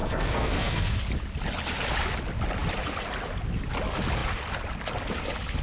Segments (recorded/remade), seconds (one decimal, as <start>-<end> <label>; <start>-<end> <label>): 0.0-1.0 remade; 1.0-5.6 recorded